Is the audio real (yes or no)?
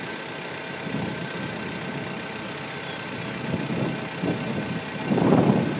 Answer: yes